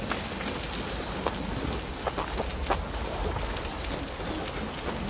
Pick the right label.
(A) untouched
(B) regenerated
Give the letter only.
A